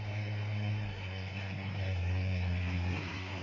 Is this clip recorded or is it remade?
remade